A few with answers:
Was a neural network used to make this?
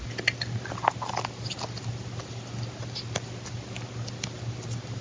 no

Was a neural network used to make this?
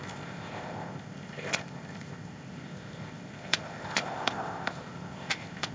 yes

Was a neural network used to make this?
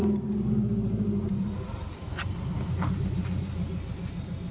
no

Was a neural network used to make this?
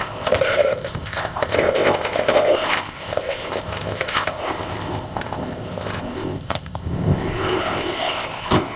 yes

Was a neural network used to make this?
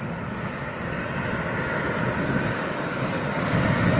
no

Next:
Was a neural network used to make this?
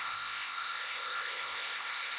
yes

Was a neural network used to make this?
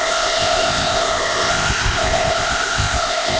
yes